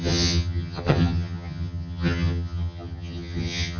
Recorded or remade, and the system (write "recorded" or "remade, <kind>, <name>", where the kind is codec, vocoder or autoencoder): remade, vocoder, HiFi-GAN